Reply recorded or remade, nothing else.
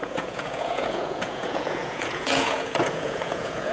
remade